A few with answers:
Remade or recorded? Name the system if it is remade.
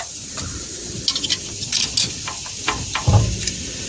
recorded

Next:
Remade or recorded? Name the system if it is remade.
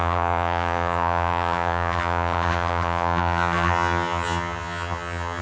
remade, vocoder, HiFi-GAN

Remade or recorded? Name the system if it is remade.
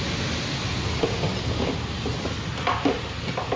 recorded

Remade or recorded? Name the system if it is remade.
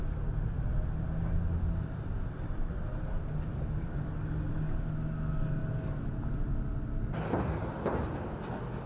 recorded